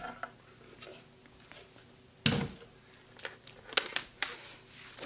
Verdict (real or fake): real